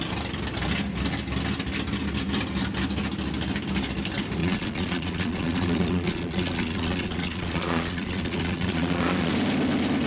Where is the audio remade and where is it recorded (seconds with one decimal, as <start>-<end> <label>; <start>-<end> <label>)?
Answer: 0.0-4.4 recorded; 4.4-9.3 remade; 9.3-10.1 recorded